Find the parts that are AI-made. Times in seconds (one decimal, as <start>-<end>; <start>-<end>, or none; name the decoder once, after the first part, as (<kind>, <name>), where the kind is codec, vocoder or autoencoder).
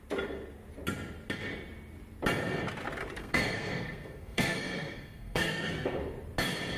3.2-6.0 (codec, SNAC)